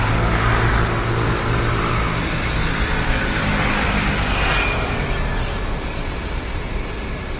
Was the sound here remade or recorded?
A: recorded